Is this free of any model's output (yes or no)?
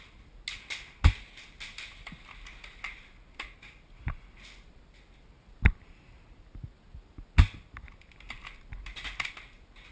yes